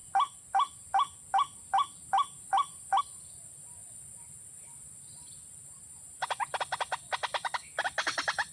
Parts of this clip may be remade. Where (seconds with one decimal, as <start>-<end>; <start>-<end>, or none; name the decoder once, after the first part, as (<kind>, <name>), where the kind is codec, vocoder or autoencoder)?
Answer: none